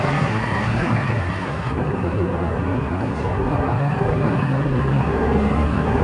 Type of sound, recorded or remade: remade